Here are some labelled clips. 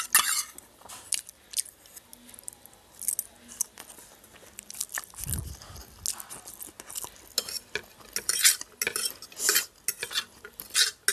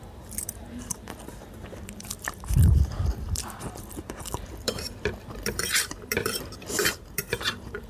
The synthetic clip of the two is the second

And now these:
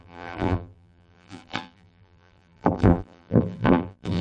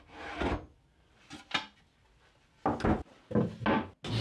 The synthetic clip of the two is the first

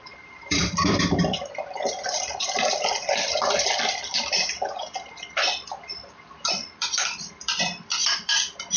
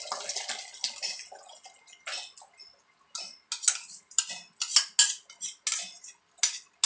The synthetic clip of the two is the first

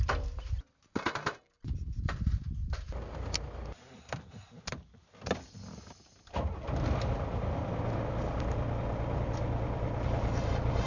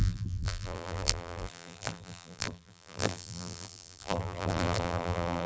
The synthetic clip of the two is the second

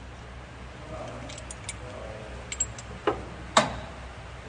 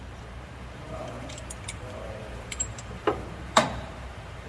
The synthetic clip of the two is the second